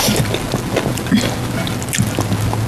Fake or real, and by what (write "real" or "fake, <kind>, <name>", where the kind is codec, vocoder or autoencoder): real